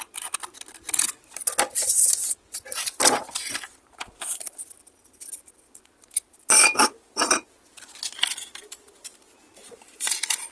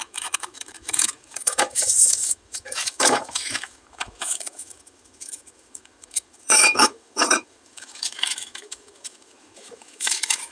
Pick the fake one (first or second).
second